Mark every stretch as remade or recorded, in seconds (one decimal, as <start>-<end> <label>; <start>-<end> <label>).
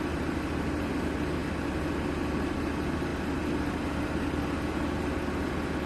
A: 0.0-5.9 recorded